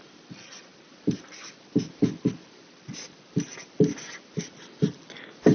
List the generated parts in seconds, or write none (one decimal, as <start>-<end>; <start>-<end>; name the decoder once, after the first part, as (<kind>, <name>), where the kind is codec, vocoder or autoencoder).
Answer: none